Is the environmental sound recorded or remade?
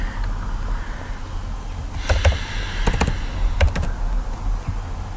recorded